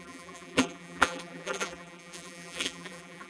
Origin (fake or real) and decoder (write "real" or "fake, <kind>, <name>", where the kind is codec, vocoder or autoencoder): fake, vocoder, BigVGAN v2